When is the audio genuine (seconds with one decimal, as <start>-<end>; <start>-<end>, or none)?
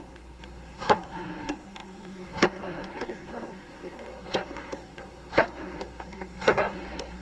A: none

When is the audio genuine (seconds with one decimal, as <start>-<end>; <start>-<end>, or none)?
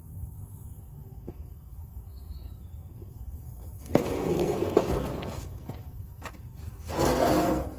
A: none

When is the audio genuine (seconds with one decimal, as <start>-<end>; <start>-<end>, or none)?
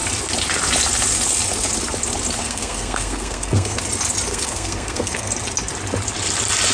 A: 0.0-2.4; 3.8-4.3; 5.3-6.7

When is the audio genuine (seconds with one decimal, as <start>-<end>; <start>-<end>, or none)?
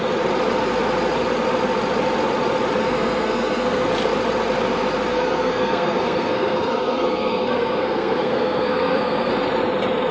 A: 0.0-2.8; 3.9-5.1; 9.3-10.1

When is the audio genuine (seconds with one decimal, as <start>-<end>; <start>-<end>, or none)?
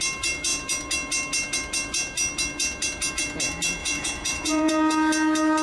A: 0.0-3.8; 4.7-5.6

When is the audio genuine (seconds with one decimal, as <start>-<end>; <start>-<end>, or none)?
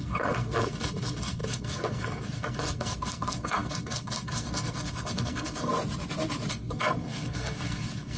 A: 5.7-6.5